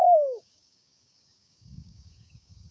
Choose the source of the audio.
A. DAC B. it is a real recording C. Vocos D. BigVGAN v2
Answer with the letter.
A